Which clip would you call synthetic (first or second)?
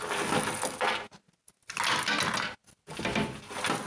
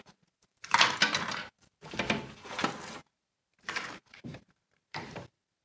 second